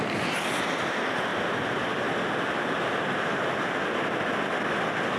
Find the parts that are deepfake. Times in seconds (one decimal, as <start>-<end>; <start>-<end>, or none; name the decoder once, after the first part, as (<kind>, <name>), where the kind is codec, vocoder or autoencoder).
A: none